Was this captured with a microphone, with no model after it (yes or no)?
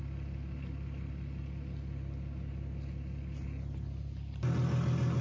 yes